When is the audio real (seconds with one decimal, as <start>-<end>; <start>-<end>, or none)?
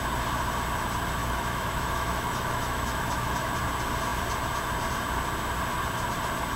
0.0-1.2; 3.5-6.6